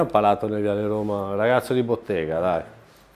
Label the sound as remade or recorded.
recorded